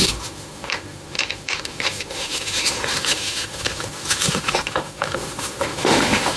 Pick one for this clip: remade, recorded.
remade